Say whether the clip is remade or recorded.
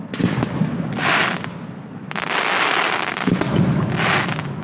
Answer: recorded